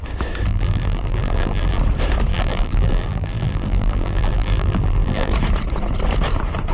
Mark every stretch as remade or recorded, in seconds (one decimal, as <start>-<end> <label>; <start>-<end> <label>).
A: 0.0-0.5 recorded; 0.5-1.8 remade; 1.8-2.3 recorded; 2.3-5.3 remade; 5.3-6.7 recorded